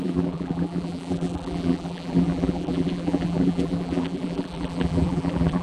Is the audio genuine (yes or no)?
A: no